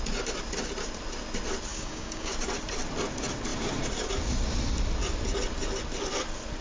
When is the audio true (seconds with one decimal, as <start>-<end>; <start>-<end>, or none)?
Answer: 0.0-1.7; 2.3-6.6